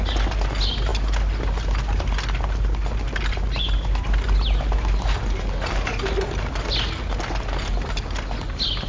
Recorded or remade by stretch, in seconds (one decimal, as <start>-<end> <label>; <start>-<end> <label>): 0.0-8.9 recorded